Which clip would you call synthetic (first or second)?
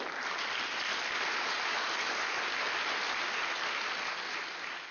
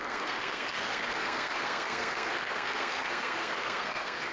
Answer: second